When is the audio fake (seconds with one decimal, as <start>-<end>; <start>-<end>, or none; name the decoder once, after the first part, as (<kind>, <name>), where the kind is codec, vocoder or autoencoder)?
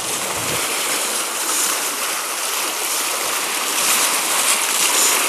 0.4-2.0 (vocoder, BigVGAN v2)